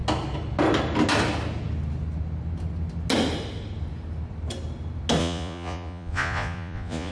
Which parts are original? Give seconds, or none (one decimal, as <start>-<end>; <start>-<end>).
0.0-5.2